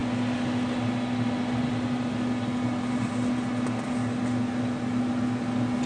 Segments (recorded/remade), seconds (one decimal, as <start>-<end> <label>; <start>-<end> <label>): 0.0-5.9 recorded